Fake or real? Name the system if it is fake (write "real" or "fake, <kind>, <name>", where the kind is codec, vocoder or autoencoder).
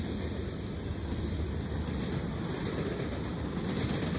real